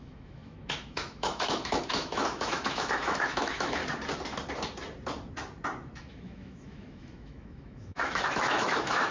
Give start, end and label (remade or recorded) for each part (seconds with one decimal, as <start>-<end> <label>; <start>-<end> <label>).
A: 0.0-3.8 remade; 3.8-6.0 recorded; 6.0-9.1 remade